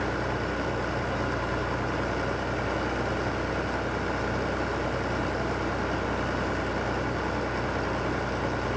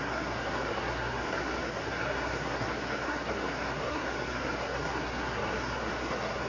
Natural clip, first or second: first